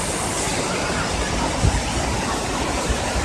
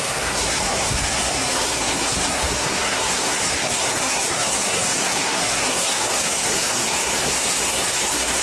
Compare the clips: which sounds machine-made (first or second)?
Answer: second